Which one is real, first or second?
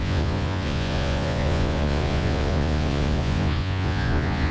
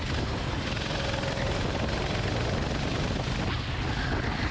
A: second